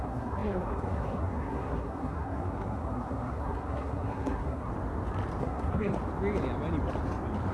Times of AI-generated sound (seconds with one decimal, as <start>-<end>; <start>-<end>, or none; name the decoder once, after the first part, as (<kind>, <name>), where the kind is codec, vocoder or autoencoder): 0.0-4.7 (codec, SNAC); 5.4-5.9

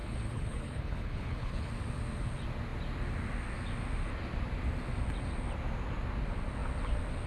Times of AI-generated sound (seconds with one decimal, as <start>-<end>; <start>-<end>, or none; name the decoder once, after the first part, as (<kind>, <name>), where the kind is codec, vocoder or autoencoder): 0.0-1.7 (codec, HILCodec)

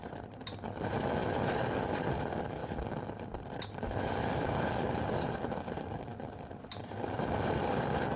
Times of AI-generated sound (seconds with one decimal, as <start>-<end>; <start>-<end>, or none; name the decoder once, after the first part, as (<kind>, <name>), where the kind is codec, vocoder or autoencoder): none

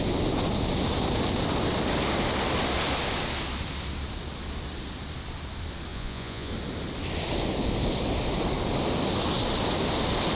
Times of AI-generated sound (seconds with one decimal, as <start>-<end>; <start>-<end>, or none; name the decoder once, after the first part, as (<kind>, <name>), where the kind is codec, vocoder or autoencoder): 5.9-6.5 (vocoder, Vocos)

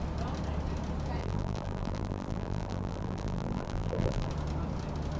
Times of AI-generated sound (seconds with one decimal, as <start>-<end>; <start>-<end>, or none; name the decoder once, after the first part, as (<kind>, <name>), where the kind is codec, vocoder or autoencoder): 1.2-4.3 (vocoder, BigVGAN v2)

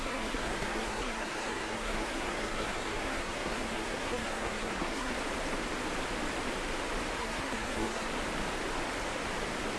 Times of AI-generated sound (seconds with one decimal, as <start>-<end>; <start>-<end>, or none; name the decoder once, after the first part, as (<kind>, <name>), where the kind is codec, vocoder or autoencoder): 0.0-5.1 (codec, SNAC); 7.2-8.1